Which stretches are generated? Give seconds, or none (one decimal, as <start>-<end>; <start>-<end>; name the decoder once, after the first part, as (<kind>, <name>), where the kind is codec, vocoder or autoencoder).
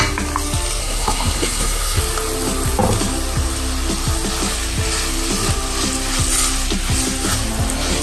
0.8-2.0 (codec, SNAC)